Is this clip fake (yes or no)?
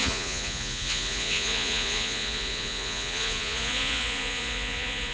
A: yes